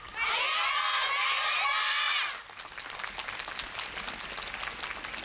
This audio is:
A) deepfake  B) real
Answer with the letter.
B